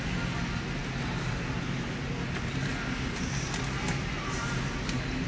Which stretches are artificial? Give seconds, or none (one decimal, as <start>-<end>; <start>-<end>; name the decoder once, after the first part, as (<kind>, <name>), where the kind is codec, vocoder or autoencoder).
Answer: none